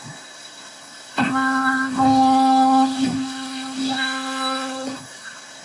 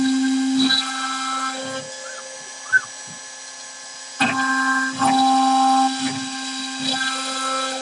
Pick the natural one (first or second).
second